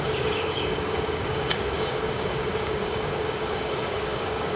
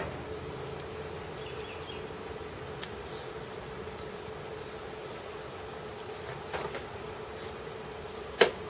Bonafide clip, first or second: second